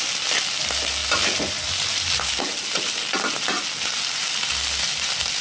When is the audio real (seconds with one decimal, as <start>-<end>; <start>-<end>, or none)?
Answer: 0.0-5.4

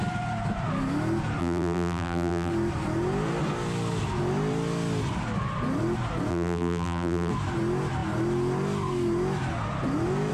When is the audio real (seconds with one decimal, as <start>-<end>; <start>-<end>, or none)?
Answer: 0.0-1.4; 2.5-6.3; 7.3-10.3

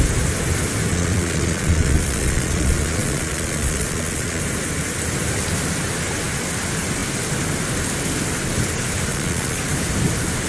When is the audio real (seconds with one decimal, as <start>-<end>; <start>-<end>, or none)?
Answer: 0.0-0.9; 4.4-9.1; 9.6-10.5